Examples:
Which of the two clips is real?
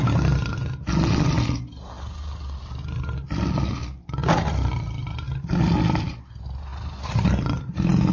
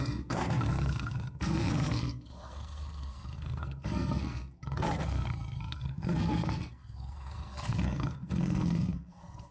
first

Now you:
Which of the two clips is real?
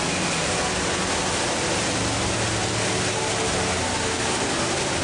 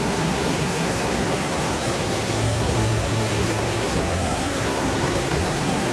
first